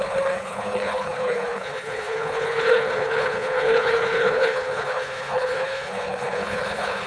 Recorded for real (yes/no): no